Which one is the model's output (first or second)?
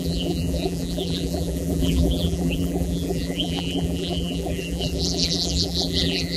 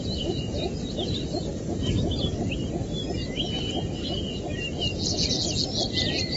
first